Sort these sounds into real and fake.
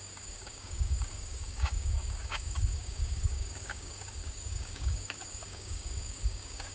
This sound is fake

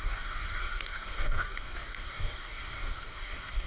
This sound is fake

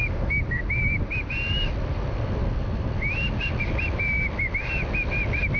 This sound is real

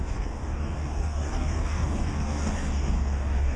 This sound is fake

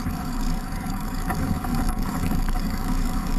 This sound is fake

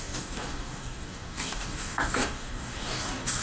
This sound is fake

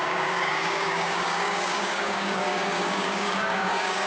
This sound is fake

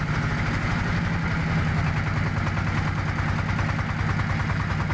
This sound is real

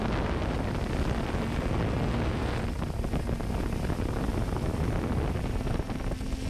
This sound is real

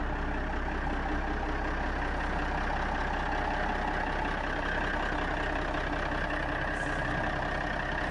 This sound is real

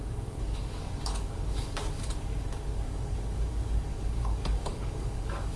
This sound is fake